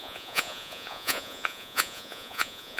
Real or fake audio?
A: fake